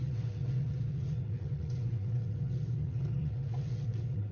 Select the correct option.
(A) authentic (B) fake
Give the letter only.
B